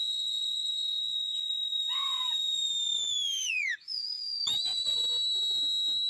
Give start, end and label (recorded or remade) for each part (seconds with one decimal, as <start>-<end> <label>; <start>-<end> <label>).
0.0-5.0 remade; 5.0-6.1 recorded